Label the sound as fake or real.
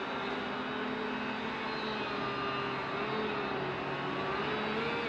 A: real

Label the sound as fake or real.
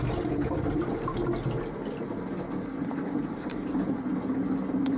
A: real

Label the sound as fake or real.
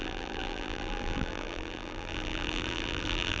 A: fake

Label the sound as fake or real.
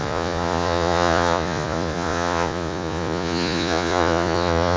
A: fake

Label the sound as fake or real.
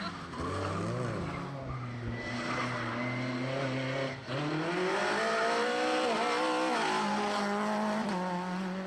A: real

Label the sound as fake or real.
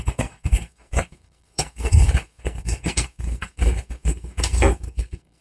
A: fake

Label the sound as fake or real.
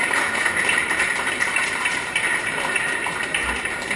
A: fake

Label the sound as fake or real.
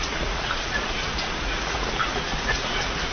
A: fake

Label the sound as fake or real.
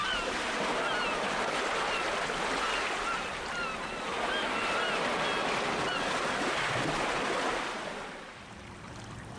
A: real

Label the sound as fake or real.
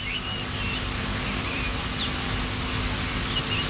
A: real